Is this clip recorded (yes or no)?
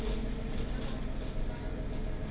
yes